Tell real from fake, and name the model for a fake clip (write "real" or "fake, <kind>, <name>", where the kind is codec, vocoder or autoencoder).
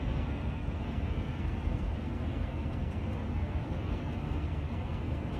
fake, codec, SNAC